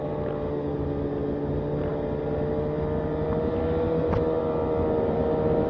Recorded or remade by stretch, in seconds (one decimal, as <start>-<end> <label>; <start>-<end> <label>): 0.0-5.7 recorded

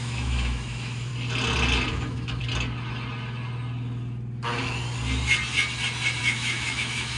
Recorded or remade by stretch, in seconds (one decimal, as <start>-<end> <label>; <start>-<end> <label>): 0.0-1.1 remade; 1.1-1.9 recorded; 1.9-2.4 remade; 2.4-6.2 recorded; 6.2-7.2 remade

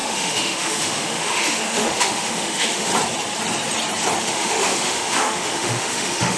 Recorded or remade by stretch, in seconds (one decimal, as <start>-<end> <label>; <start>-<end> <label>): 0.0-2.9 remade; 2.9-4.2 recorded; 4.2-6.4 remade

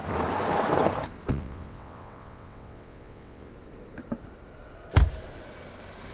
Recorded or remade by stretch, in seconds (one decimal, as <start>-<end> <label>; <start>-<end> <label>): 0.0-1.3 recorded; 1.3-3.5 remade; 3.5-6.1 recorded

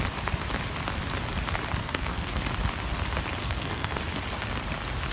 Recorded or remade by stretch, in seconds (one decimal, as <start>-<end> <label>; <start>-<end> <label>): 0.0-1.8 recorded; 1.8-2.4 remade; 2.4-3.4 recorded; 3.4-4.0 remade; 4.0-5.1 recorded

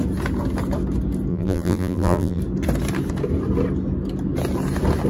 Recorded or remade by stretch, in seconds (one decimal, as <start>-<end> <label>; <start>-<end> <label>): 0.0-1.3 recorded; 1.3-2.4 remade; 2.4-5.1 recorded

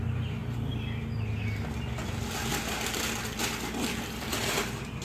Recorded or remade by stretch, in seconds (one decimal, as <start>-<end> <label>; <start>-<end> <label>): 0.0-2.5 recorded; 2.5-4.6 remade; 4.6-5.0 recorded